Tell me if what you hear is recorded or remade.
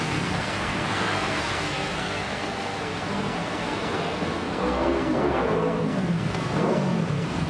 remade